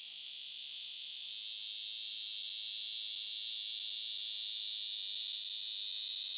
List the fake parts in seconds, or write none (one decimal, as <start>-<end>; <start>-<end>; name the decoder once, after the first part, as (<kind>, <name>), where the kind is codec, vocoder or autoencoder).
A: 0.0-1.3 (vocoder, Vocos)